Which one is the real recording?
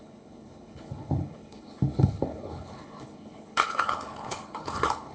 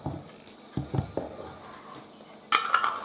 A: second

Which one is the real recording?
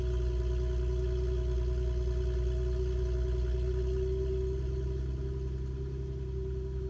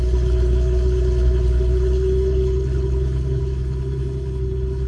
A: first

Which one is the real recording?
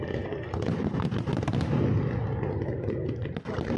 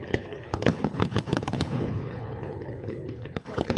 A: first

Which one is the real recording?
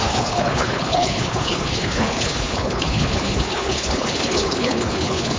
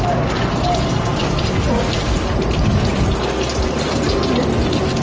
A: second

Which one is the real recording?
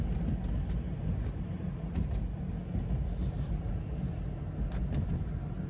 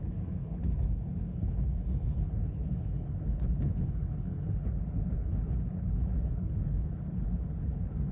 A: first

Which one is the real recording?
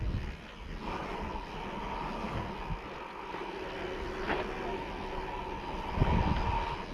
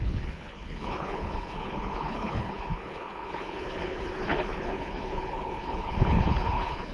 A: first